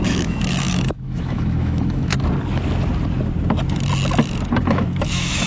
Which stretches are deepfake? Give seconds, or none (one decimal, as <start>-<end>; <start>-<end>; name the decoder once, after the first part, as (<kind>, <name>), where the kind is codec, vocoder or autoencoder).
0.0-2.1 (autoencoder, DAC-VAE); 4.6-5.5